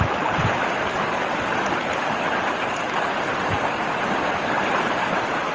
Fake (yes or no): no